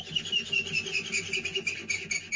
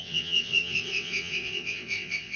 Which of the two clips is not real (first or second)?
second